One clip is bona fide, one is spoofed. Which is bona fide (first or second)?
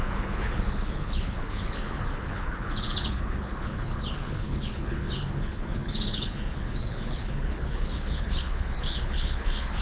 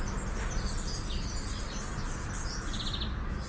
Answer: second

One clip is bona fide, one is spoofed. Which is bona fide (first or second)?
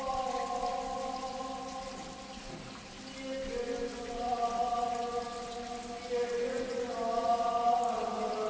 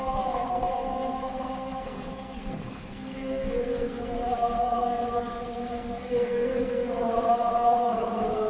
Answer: first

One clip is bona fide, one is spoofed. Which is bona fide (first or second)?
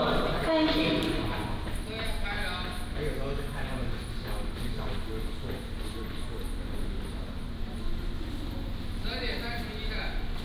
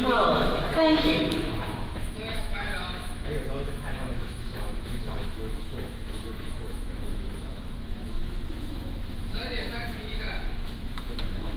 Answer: first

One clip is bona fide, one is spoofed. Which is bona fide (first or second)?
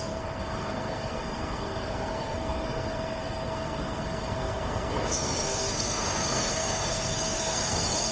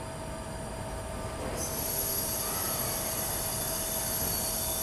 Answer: second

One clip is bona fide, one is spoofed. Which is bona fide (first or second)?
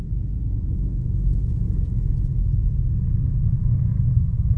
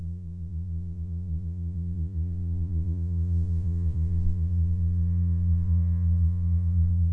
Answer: first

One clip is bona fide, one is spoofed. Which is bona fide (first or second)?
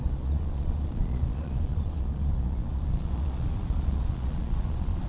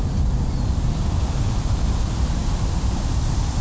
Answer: second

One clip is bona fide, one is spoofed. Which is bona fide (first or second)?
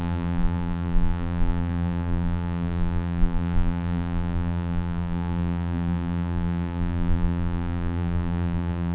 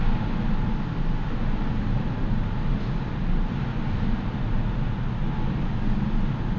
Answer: second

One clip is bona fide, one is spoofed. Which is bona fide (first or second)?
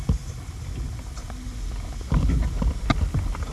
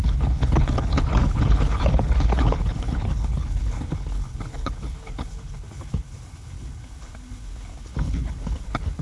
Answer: first